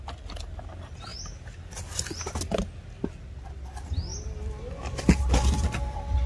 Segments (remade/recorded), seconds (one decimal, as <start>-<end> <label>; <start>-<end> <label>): 0.0-6.3 recorded